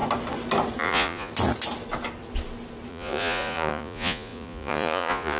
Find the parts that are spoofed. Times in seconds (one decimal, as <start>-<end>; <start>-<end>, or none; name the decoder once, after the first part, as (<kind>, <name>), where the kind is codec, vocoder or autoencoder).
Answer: 0.8-1.3 (vocoder, Vocos); 2.9-5.4

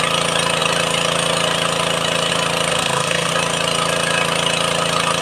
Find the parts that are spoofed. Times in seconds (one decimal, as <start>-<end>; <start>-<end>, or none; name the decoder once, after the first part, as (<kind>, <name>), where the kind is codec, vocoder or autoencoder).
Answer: 2.7-3.3 (codec, SNAC)

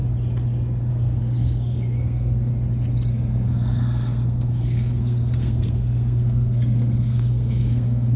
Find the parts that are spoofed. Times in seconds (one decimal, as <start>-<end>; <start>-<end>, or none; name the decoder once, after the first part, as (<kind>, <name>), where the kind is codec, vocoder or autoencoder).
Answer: 0.9-2.5 (codec, SNAC); 3.1-8.2

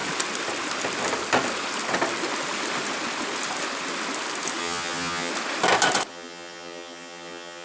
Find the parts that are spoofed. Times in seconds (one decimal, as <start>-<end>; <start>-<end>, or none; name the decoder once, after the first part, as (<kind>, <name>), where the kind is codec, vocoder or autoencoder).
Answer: 4.6-5.3 (vocoder, HiFi-GAN); 6.1-7.6

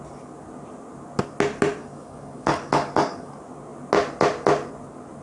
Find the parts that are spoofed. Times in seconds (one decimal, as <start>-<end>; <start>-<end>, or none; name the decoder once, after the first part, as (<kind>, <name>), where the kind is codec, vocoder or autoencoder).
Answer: 1.8-3.3 (codec, DAC)

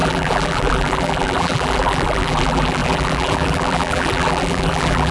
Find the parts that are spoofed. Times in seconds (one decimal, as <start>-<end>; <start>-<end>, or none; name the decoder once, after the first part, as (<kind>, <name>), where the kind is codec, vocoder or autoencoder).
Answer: 0.0-5.1 (vocoder, BigVGAN v2)